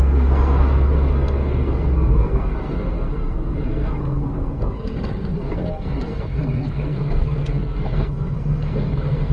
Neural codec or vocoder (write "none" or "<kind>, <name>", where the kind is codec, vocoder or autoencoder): codec, SNAC